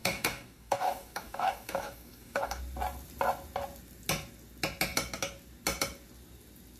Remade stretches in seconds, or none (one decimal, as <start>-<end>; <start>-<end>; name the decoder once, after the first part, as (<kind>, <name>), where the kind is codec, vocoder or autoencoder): 0.0-2.6 (codec, DAC)